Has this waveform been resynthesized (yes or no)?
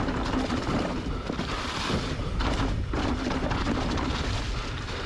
no